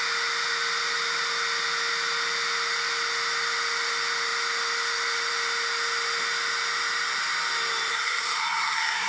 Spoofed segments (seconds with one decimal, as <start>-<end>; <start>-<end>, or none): 7.9-9.1